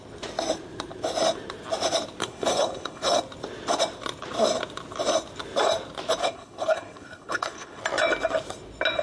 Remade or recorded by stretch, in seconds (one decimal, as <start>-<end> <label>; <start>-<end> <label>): 0.0-2.2 recorded; 2.2-3.2 remade; 3.2-6.2 recorded; 6.2-7.8 remade; 7.8-9.0 recorded